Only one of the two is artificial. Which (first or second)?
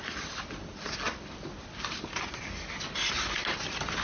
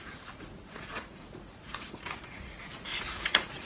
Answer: second